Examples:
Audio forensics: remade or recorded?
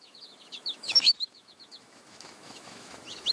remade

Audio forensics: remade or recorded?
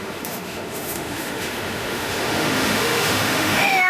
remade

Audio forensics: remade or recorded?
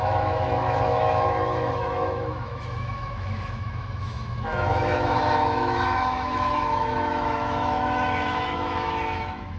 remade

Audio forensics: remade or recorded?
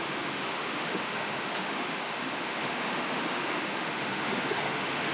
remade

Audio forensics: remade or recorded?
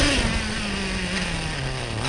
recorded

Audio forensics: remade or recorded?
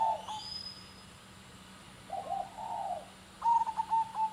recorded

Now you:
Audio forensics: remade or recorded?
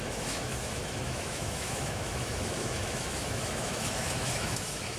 remade